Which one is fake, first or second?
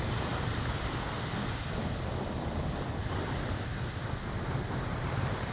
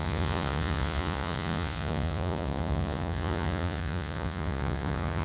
second